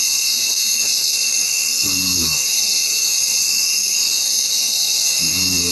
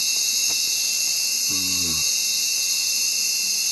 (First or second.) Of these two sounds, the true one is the second